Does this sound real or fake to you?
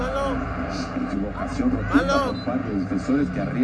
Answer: real